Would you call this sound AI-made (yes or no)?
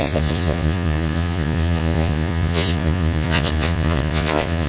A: yes